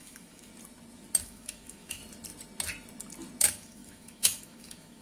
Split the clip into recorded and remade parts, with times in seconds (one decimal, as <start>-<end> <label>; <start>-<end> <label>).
0.0-0.5 remade; 0.5-1.2 recorded; 1.2-2.0 remade; 2.0-3.4 recorded; 3.4-5.0 remade